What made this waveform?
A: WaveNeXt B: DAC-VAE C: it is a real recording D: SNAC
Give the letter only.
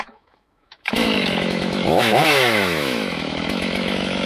B